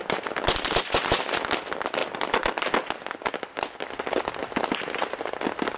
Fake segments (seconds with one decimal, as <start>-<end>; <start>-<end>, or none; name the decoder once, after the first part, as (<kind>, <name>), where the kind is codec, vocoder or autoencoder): none

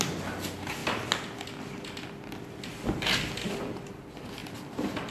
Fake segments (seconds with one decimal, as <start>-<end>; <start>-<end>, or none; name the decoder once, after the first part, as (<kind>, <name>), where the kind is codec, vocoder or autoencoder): 0.0-0.8 (vocoder, BigVGAN v2); 3.9-4.4

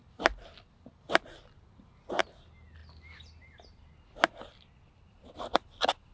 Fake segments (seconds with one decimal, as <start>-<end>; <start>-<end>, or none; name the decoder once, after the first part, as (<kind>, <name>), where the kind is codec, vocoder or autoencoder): none

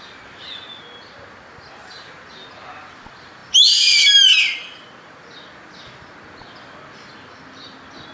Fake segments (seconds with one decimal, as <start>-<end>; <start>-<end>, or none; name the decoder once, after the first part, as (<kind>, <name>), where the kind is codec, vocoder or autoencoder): none

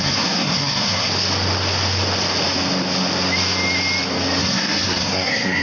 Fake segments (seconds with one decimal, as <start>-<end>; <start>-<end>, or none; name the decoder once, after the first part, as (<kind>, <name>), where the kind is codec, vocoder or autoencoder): 0.0-1.1 (codec, SNAC); 4.4-5.6